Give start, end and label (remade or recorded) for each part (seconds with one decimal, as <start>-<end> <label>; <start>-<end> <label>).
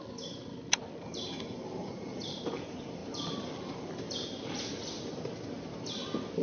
0.0-1.8 recorded; 1.8-2.4 remade; 2.4-6.4 recorded